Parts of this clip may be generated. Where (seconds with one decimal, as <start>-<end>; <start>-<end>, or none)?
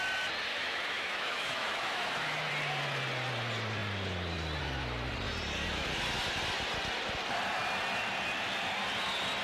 0.5-2.5